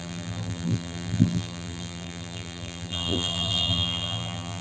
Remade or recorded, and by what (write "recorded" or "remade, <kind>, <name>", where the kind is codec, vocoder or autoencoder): remade, vocoder, BigVGAN v2